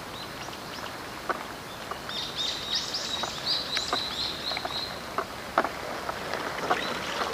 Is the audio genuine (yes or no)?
yes